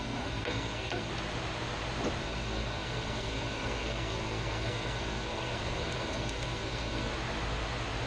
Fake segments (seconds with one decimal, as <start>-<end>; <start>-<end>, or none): 0.0-1.1; 2.2-7.1